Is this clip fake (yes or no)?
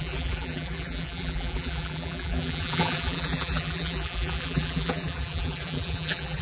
yes